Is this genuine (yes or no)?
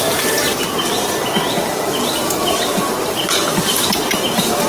yes